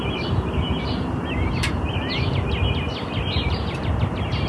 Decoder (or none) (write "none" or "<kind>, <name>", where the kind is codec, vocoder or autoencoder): none